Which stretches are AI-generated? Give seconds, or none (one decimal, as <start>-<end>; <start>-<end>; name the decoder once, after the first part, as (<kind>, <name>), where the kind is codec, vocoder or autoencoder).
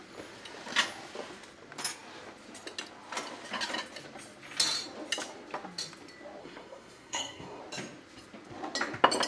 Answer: 6.4-7.6 (codec, SNAC)